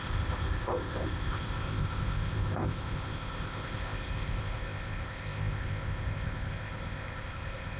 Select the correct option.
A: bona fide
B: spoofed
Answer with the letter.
B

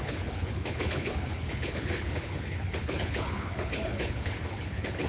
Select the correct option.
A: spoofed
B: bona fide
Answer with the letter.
A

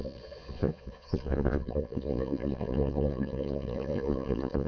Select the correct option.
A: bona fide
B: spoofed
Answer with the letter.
B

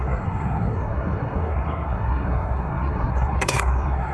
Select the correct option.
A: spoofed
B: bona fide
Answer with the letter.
A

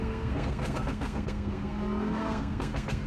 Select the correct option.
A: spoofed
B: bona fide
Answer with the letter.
A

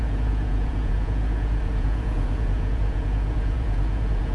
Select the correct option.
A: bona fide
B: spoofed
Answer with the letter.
B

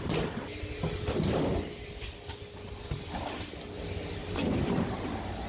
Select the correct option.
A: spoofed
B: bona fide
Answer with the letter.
B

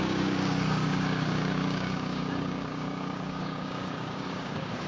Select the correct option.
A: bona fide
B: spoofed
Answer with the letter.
B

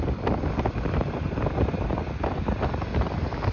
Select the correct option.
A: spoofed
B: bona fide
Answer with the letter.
B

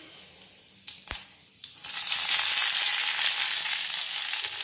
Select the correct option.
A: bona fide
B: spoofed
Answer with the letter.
A